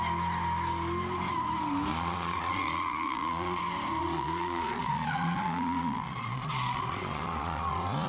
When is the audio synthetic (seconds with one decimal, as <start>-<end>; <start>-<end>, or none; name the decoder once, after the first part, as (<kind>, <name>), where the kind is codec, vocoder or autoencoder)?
1.9-3.6 (vocoder, Vocos); 4.0-8.1